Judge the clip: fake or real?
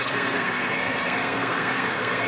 fake